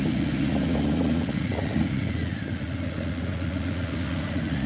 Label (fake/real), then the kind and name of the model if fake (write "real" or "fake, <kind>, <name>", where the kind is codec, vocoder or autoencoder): fake, vocoder, Vocos